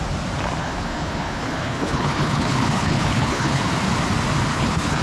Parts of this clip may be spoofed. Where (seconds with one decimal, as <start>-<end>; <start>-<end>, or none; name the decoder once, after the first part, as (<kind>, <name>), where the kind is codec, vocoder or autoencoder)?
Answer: 0.6-3.6 (codec, HILCodec); 4.5-5.0